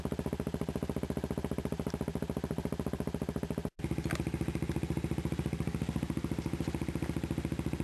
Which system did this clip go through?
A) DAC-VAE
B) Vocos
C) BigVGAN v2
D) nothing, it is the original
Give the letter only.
D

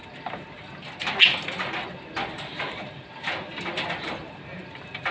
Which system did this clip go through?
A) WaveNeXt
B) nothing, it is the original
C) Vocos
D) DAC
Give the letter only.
B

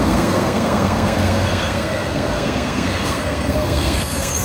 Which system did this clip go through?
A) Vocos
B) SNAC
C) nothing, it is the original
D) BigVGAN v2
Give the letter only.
B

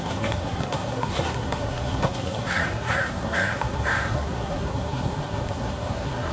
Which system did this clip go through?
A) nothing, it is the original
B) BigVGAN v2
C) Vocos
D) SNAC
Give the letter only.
D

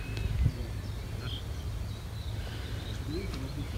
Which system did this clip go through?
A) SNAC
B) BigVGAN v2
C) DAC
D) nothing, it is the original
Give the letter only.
D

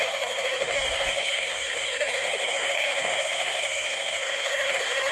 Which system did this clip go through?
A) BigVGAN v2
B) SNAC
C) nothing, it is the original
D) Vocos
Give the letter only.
B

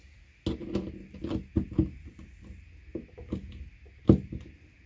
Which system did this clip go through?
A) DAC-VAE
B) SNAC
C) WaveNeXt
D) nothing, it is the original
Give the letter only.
D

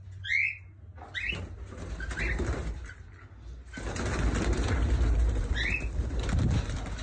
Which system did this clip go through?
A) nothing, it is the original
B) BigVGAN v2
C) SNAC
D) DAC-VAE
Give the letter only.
A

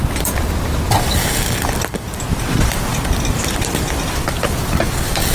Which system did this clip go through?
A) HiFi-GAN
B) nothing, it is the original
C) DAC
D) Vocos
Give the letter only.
B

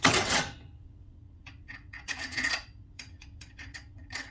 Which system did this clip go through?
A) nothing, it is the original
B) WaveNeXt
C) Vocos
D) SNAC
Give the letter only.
B